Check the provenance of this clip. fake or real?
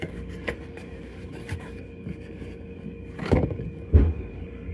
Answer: fake